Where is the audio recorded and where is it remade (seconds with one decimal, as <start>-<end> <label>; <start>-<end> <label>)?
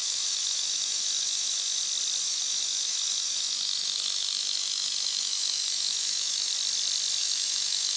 0.0-1.8 remade; 1.8-2.2 recorded; 2.2-6.5 remade; 6.5-7.2 recorded; 7.2-8.0 remade